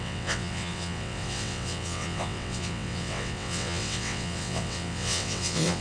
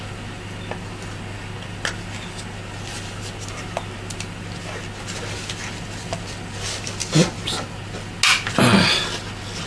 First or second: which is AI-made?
first